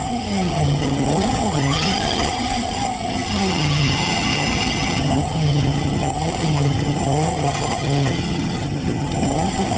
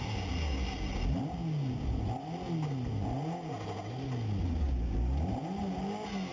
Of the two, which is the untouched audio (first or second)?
second